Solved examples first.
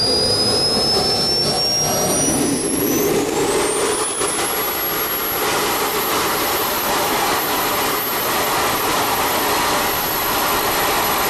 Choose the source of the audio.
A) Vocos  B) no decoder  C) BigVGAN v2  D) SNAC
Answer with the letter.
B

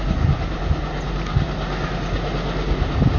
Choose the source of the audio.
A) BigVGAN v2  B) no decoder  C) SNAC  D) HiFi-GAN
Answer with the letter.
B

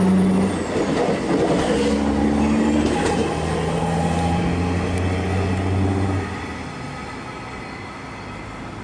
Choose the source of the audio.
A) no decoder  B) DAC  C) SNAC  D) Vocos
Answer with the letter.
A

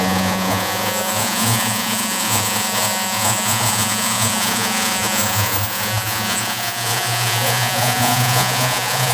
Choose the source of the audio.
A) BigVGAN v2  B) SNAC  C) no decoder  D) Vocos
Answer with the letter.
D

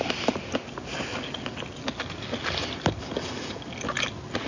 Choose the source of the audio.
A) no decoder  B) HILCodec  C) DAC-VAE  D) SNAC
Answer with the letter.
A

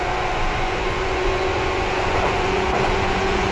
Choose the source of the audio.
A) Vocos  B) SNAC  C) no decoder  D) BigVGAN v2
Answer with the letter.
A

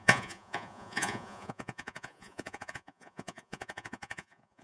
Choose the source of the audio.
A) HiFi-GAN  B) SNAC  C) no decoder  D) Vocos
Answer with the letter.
D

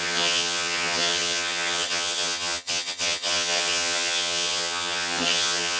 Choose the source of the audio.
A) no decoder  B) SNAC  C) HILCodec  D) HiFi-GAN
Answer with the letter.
D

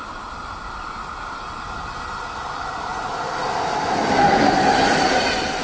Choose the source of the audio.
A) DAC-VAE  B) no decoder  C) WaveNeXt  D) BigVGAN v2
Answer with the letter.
B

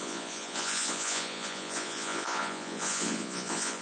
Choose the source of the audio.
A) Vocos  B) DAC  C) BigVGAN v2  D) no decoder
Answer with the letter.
A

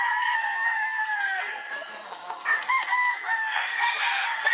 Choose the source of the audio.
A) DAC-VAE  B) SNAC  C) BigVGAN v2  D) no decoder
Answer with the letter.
B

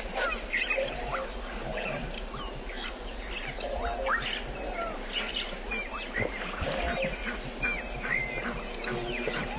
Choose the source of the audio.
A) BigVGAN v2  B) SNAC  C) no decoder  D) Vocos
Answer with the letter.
C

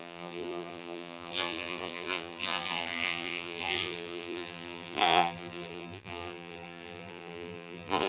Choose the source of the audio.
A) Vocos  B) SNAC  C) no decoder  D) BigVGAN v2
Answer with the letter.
D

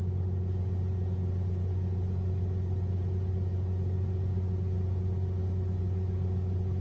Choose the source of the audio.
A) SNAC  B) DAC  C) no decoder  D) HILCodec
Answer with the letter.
C